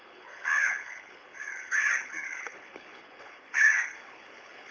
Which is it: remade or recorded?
remade